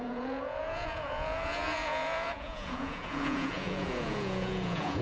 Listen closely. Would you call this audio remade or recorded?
remade